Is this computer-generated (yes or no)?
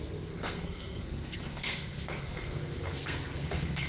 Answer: yes